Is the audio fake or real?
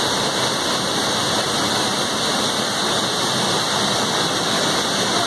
real